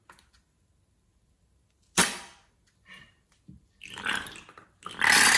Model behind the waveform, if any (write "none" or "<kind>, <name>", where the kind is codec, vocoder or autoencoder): none